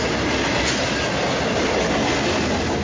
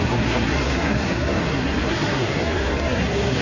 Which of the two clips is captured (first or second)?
first